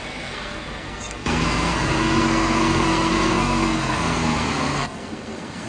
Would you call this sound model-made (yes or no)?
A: yes